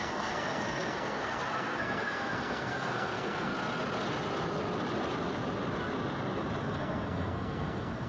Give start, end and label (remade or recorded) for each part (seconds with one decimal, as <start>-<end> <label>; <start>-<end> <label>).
0.0-3.5 remade; 3.5-6.6 recorded; 6.6-8.1 remade